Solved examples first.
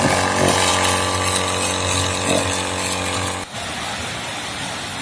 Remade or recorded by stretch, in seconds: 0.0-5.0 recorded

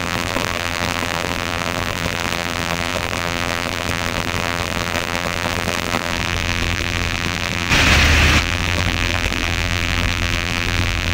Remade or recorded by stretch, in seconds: 0.0-7.7 remade; 7.7-8.4 recorded; 8.4-11.1 remade

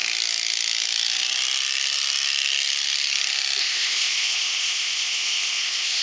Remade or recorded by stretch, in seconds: 0.0-3.6 recorded; 3.6-6.0 remade

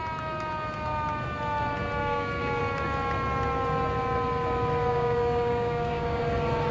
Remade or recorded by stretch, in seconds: 0.0-2.0 recorded; 2.0-2.6 remade; 2.6-4.9 recorded; 4.9-6.2 remade; 6.2-6.7 recorded

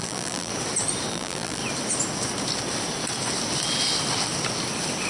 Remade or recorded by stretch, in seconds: 0.0-0.5 remade; 0.5-1.1 recorded; 1.1-1.6 remade; 1.6-5.1 recorded

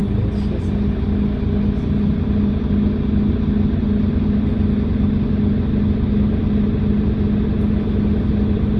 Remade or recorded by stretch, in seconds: 0.0-8.8 recorded

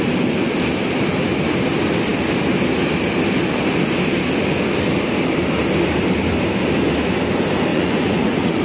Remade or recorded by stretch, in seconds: 0.0-7.7 recorded; 7.7-8.6 remade